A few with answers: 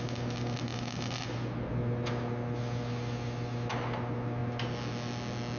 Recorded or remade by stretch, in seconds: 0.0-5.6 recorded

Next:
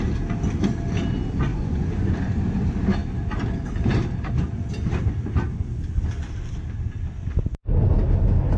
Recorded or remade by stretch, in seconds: 0.0-1.5 recorded; 1.5-2.1 remade; 2.1-8.6 recorded

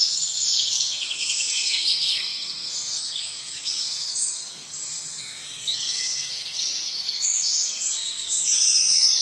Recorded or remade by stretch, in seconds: 0.0-9.2 remade

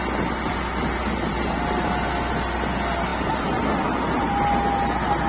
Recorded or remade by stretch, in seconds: 0.0-5.3 recorded

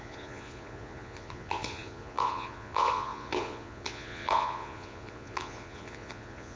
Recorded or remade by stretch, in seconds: 0.0-6.6 remade

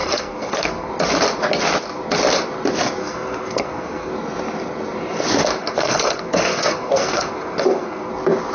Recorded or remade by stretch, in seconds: 0.0-0.9 remade; 0.9-3.0 recorded; 3.0-4.1 remade; 4.1-5.6 recorded; 5.6-8.1 remade; 8.1-8.5 recorded

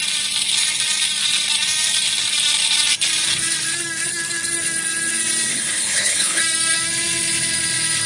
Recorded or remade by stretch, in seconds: 0.0-5.5 recorded; 5.5-6.4 remade; 6.4-8.1 recorded

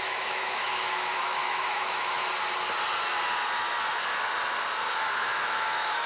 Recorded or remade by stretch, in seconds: 0.0-2.2 remade; 2.2-5.1 recorded; 5.1-6.1 remade